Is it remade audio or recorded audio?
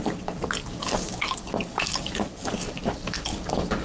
remade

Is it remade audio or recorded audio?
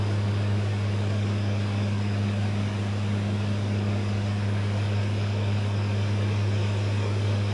remade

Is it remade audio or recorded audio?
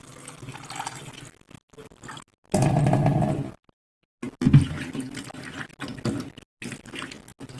recorded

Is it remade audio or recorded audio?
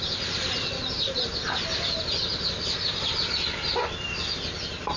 recorded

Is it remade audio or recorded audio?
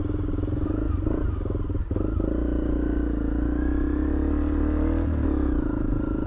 recorded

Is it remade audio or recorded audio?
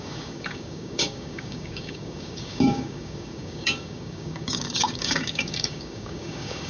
remade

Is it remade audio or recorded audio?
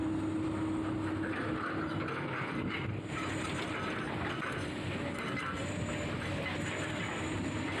recorded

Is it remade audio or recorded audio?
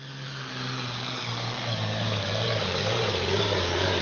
remade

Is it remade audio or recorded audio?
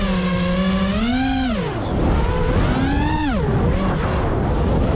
recorded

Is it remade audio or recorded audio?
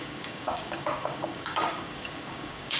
remade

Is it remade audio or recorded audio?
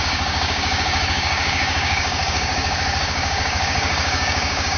remade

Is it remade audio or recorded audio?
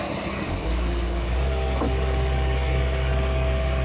remade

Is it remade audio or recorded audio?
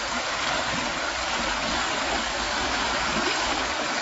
remade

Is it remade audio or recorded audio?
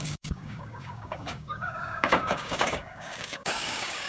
remade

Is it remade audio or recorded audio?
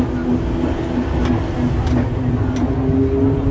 recorded